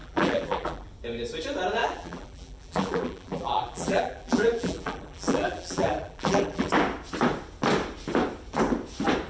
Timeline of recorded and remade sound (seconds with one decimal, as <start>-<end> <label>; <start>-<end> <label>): 0.0-0.9 remade; 0.9-1.8 recorded; 1.8-6.7 remade; 6.7-9.3 recorded